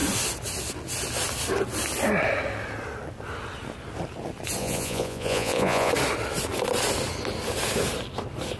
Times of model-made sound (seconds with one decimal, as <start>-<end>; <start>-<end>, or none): 4.6-5.9